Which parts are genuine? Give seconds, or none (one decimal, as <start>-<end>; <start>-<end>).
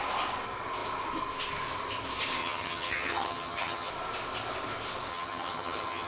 0.0-2.4; 3.9-5.1